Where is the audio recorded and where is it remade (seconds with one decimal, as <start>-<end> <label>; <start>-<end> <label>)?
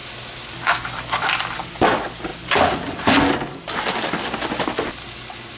0.0-5.6 recorded